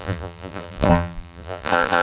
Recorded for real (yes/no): no